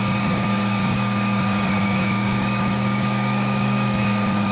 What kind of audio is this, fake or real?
fake